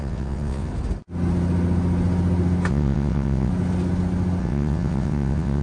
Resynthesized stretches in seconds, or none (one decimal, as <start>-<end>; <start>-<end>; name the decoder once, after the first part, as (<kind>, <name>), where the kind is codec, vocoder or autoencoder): 0.0-0.7 (vocoder, WaveNeXt); 2.7-3.5; 4.4-5.6